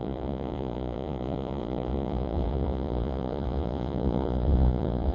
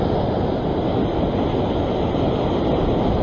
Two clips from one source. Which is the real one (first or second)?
second